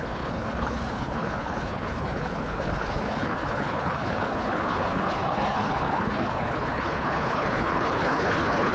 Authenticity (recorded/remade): remade